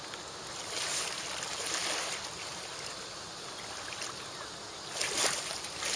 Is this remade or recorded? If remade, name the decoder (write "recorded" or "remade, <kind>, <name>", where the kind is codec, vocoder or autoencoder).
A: recorded